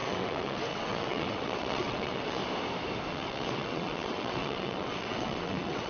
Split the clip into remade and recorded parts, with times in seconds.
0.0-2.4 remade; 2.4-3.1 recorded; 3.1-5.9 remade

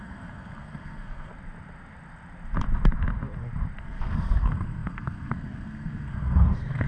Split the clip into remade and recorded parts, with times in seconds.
0.0-1.3 remade; 1.3-3.8 recorded; 3.8-6.9 remade